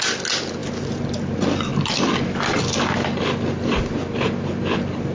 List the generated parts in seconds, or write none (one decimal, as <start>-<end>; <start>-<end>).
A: 0.6-1.1